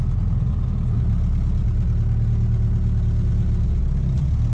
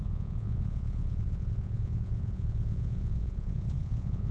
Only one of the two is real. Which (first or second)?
first